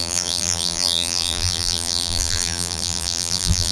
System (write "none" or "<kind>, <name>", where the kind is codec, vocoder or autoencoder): vocoder, BigVGAN v2